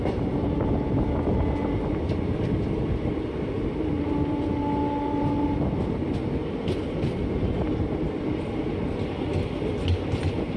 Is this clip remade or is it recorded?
recorded